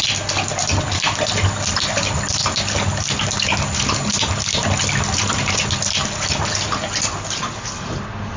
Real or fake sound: real